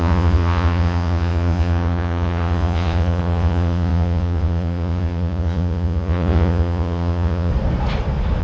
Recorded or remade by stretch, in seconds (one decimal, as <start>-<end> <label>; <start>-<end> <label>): 0.0-7.5 remade; 7.5-8.4 recorded